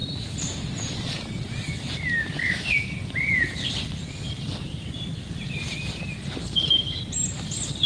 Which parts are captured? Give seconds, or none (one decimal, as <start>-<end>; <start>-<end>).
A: 0.0-6.4; 7.0-7.9